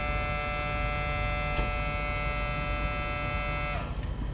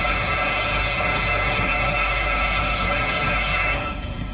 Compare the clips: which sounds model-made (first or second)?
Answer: second